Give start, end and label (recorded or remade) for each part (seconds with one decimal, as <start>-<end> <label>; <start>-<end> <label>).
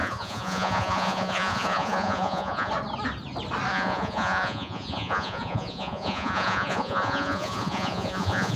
0.0-2.7 remade; 2.7-3.7 recorded; 3.7-8.6 remade